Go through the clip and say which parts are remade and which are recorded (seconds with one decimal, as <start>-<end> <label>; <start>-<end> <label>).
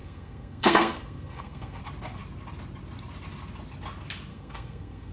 0.0-1.8 remade; 1.8-4.3 recorded; 4.3-5.1 remade